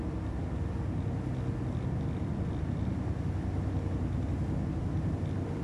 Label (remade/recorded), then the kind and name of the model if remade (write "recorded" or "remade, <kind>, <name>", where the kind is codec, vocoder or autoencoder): recorded